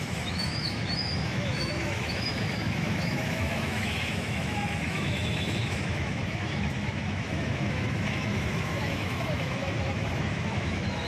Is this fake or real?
fake